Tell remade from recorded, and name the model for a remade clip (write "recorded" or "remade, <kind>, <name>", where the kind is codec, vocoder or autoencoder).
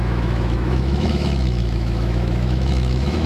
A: remade, autoencoder, DAC-VAE